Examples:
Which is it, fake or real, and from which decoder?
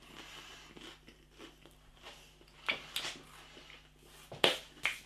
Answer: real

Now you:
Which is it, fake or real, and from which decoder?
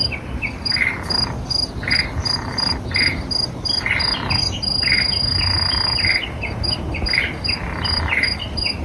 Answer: real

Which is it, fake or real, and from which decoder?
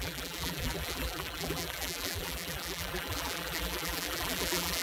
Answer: fake, vocoder, BigVGAN v2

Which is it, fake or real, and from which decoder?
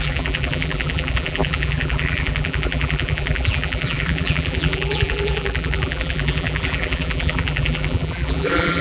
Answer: fake, vocoder, BigVGAN v2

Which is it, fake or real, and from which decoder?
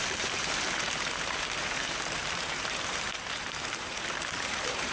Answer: fake, vocoder, BigVGAN v2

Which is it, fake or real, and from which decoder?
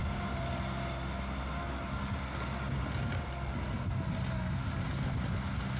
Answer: real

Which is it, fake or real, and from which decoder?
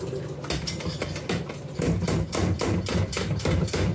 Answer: fake, vocoder, BigVGAN v2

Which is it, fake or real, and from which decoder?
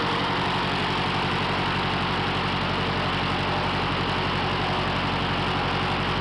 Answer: real